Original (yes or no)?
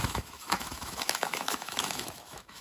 no